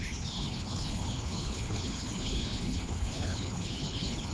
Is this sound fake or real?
fake